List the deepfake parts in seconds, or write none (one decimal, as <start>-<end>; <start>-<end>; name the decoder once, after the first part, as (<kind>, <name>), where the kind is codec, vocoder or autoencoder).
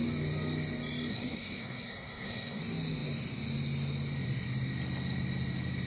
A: 1.1-2.6 (codec, SNAC)